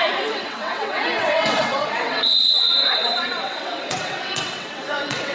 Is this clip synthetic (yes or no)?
yes